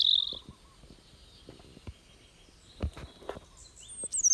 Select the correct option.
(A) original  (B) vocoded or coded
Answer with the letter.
A